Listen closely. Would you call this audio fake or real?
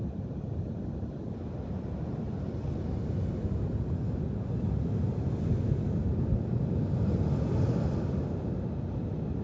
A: real